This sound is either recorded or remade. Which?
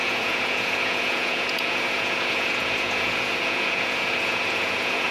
remade